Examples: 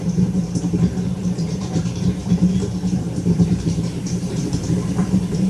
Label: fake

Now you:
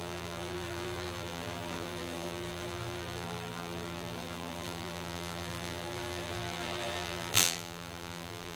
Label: fake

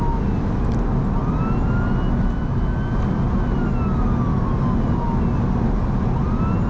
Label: real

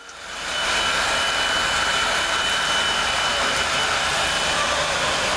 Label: fake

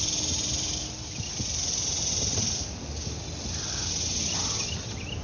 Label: fake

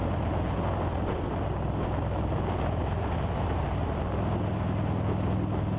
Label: real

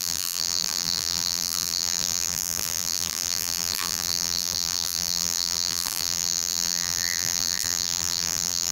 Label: fake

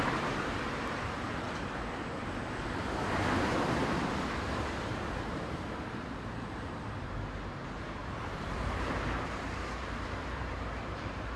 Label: fake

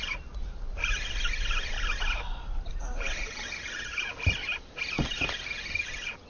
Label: real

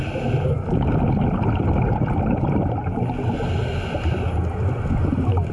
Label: real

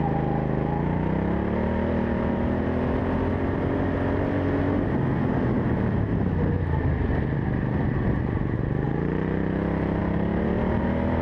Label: real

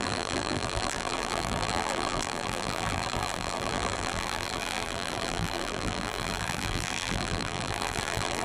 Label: fake